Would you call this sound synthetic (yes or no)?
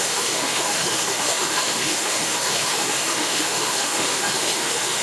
yes